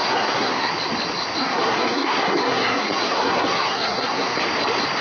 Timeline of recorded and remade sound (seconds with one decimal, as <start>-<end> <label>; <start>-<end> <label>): 0.0-0.7 remade; 0.7-1.4 recorded; 1.4-4.4 remade; 4.4-5.0 recorded